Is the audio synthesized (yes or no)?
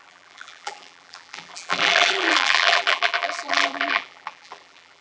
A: yes